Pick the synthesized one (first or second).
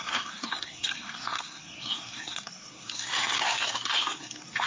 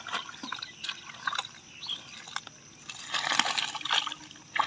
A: first